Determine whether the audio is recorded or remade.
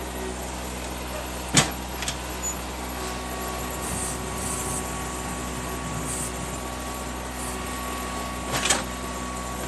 recorded